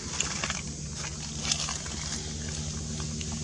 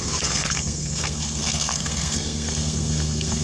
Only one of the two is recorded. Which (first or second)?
first